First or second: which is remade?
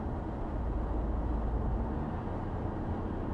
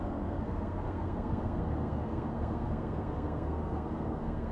second